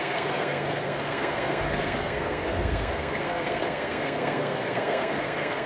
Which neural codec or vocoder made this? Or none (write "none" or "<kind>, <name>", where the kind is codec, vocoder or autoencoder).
codec, SNAC